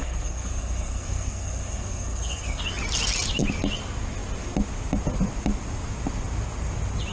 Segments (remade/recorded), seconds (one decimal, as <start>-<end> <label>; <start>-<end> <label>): 0.0-2.6 remade; 2.6-7.1 recorded